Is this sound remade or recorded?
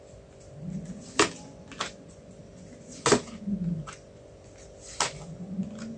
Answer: recorded